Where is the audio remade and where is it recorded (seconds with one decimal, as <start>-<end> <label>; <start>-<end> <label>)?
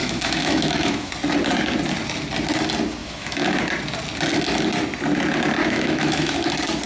0.0-1.1 remade; 1.1-3.0 recorded; 3.0-3.6 remade; 3.6-5.6 recorded; 5.6-6.5 remade; 6.5-6.9 recorded